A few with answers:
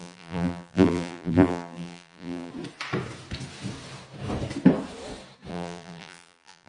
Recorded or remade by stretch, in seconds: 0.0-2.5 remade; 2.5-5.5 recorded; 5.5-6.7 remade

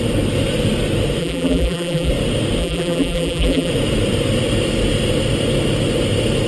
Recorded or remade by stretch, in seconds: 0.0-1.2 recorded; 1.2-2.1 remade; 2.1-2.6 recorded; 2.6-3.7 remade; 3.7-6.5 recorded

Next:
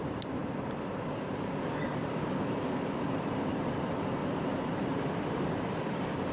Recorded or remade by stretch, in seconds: 0.0-0.4 remade; 0.4-1.8 recorded; 1.8-4.2 remade; 4.2-4.8 recorded; 4.8-6.3 remade